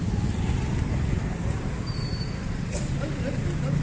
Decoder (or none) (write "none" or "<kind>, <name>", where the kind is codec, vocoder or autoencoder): none